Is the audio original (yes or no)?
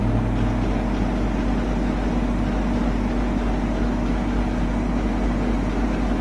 yes